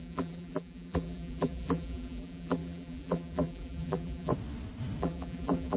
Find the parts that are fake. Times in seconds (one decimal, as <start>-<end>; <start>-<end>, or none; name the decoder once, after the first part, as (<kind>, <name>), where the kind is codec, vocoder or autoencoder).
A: 0.0-4.3 (vocoder, BigVGAN v2); 5.0-5.8